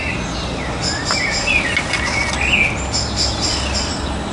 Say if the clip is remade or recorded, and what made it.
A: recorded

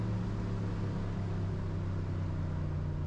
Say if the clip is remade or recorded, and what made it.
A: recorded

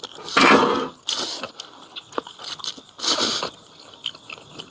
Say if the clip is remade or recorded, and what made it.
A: recorded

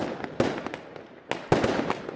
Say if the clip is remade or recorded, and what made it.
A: recorded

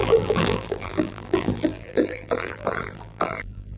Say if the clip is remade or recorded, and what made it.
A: remade, vocoder, BigVGAN v2